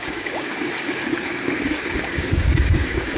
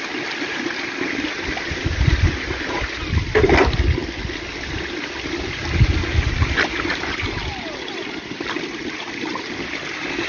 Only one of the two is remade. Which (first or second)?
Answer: first